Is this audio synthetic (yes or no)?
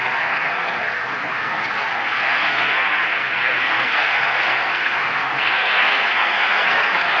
yes